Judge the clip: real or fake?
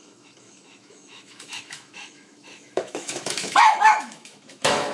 fake